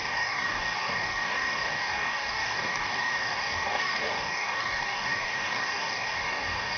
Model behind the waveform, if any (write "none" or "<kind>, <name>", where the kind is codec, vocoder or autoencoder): codec, DAC